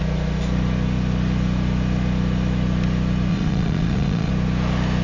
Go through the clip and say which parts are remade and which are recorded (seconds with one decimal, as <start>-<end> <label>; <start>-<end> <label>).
0.0-3.3 recorded; 3.3-4.3 remade; 4.3-5.0 recorded